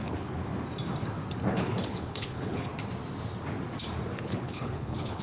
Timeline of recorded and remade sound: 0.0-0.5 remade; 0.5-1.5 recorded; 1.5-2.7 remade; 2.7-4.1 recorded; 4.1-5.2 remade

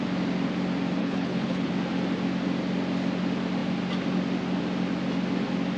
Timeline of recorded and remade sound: 0.0-1.0 recorded; 1.0-1.7 remade; 1.7-5.8 recorded

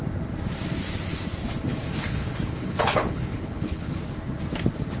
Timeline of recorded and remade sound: 0.0-1.7 recorded; 1.7-4.0 remade; 4.0-5.0 recorded

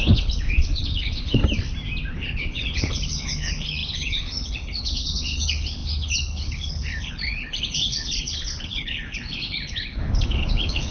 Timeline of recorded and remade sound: 0.0-1.4 remade; 1.4-2.1 recorded; 2.1-10.9 remade

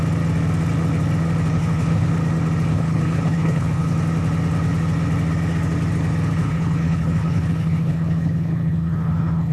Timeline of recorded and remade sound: 0.0-1.5 recorded; 1.5-2.1 remade; 2.1-2.7 recorded; 2.7-3.9 remade; 3.9-6.4 recorded; 6.4-9.5 remade

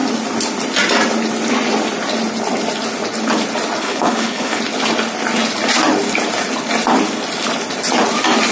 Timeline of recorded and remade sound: 0.0-3.8 recorded; 3.8-4.6 remade; 4.6-8.5 recorded